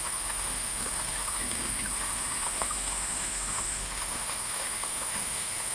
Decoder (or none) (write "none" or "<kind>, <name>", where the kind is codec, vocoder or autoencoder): autoencoder, DAC-VAE